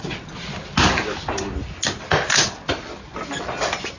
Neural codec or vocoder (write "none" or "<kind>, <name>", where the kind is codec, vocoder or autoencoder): none